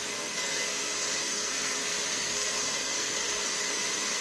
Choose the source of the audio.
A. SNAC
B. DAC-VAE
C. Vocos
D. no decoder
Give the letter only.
A